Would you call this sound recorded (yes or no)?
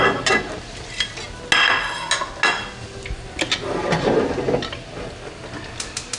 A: yes